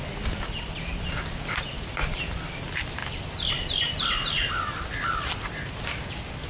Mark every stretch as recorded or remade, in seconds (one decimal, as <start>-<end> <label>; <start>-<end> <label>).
0.0-6.5 recorded